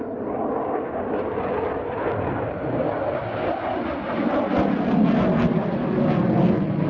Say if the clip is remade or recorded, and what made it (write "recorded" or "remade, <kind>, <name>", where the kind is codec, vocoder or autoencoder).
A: recorded